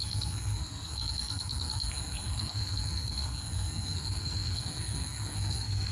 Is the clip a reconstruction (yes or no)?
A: yes